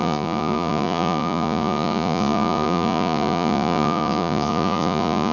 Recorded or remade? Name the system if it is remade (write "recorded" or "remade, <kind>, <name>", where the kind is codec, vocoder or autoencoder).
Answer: remade, vocoder, Vocos